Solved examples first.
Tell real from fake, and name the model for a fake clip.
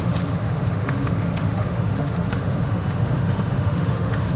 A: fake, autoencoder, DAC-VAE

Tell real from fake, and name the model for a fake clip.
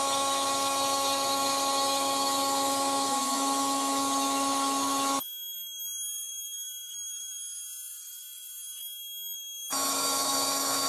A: fake, autoencoder, DAC-VAE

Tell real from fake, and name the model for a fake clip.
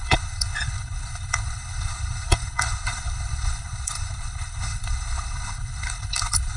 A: fake, codec, HILCodec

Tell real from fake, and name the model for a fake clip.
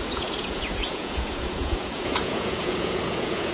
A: fake, vocoder, Vocos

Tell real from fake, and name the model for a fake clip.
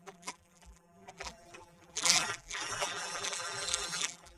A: fake, vocoder, BigVGAN v2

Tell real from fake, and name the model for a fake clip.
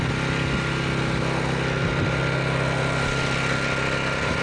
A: real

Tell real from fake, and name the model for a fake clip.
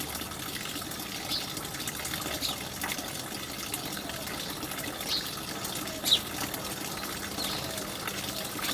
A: real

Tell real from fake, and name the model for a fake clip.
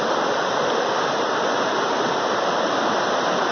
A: real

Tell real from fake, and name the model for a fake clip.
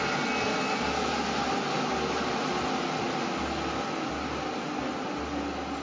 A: real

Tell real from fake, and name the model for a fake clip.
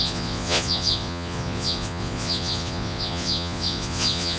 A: fake, vocoder, Vocos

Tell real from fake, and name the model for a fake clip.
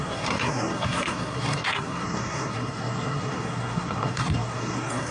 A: fake, codec, SNAC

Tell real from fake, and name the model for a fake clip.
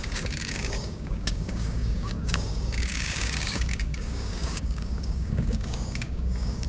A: fake, codec, DAC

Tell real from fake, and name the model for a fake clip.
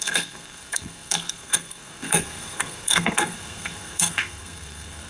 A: fake, codec, SNAC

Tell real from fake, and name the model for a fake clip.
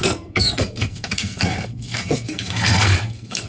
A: fake, codec, SNAC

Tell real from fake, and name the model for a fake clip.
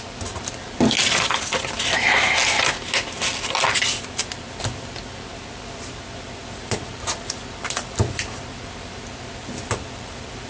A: real